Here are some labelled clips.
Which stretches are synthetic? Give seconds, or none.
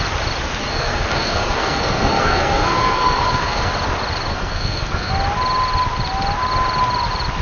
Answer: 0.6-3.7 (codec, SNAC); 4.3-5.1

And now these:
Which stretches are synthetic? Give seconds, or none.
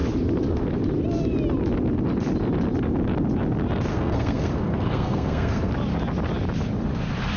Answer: 3.9-5.7 (codec, SNAC)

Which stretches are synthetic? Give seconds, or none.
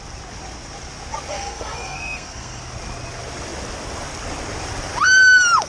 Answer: 1.3-2.6 (codec, SNAC)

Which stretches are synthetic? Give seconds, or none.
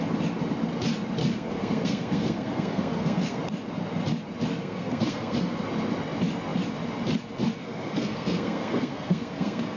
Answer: 1.2-3.4 (codec, SNAC); 4.6-5.6; 7.6-9.8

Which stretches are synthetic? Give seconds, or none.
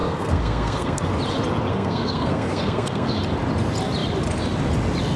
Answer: 0.0-1.1 (codec, SNAC); 1.7-3.2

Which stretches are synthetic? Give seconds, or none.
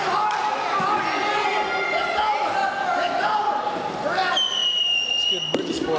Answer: none